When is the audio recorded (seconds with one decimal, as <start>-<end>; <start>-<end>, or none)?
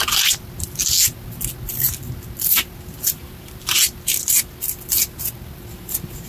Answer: 0.0-2.9; 3.8-5.7